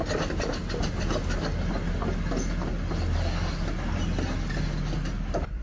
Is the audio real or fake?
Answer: real